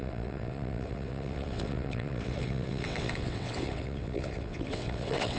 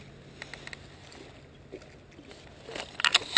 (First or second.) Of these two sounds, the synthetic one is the first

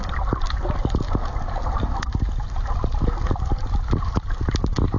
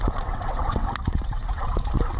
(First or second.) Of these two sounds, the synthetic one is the second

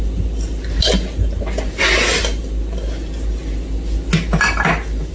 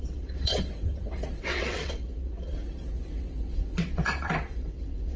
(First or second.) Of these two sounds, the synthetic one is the second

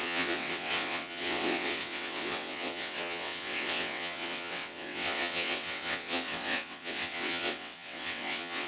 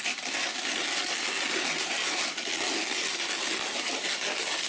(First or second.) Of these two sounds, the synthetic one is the first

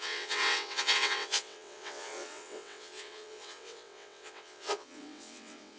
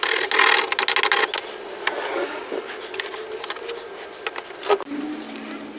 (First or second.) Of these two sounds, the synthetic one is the first